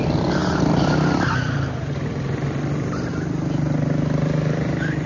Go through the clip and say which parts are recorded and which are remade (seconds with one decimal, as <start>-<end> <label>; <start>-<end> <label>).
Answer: 0.0-5.1 recorded